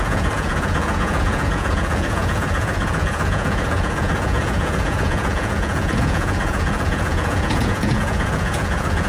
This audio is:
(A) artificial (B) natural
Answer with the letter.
A